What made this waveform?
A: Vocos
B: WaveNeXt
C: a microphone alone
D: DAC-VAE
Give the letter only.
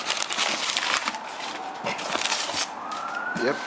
C